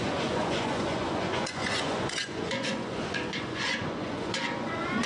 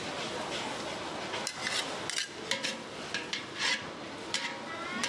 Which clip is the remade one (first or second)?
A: first